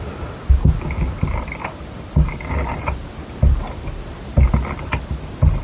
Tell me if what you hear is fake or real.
real